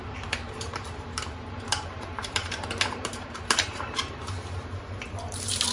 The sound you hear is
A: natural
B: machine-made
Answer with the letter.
B